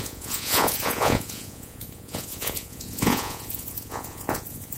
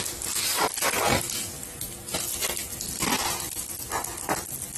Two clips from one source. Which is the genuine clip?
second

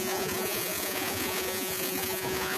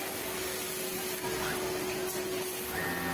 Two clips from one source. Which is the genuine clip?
second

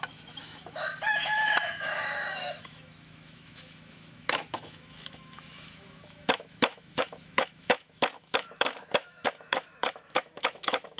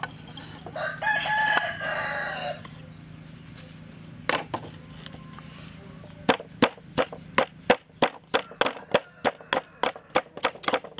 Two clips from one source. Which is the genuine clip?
second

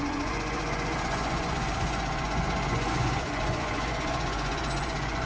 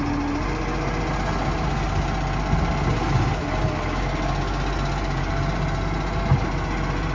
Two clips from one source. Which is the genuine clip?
second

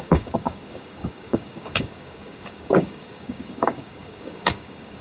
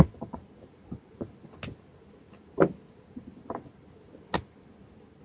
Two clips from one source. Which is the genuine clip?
second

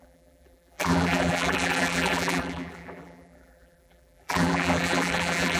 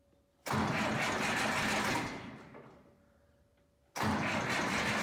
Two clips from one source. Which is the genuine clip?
second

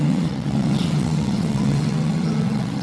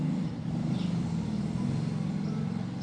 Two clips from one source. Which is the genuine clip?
second